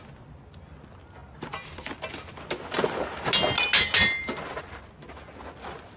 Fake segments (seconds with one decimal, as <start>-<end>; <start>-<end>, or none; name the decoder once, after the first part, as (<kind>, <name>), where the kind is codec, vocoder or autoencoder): none